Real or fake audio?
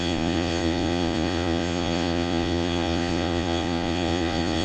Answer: fake